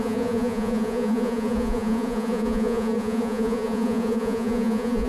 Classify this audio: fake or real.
fake